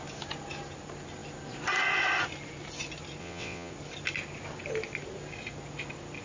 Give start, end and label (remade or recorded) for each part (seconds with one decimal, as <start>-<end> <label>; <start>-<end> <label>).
0.0-3.2 recorded; 3.2-3.7 remade; 3.7-6.2 recorded